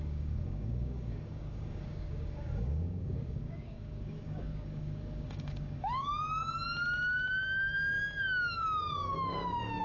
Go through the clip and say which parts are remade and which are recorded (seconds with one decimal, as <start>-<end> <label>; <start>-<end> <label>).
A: 0.0-6.1 remade; 6.1-7.3 recorded; 7.3-9.8 remade